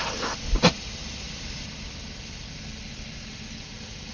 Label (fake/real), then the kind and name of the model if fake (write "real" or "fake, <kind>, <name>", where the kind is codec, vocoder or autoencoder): real